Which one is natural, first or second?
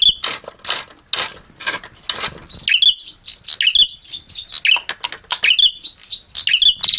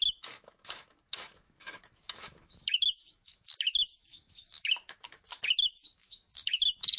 first